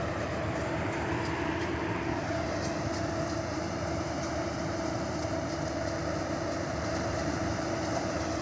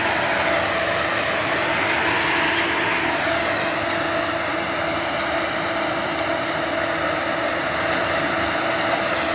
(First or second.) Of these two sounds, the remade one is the first